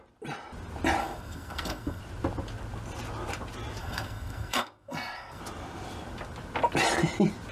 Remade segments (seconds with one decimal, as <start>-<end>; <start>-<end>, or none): 1.0-2.0; 3.8-5.4